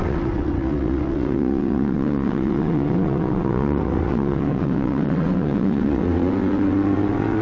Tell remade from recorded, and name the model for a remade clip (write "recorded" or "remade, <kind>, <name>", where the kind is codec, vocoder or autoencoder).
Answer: remade, vocoder, WaveNeXt